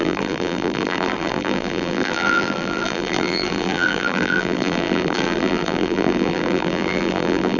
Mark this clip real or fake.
fake